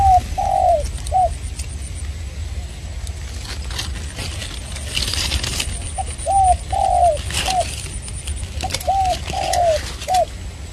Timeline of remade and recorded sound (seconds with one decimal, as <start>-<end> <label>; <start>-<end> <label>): 0.0-10.7 recorded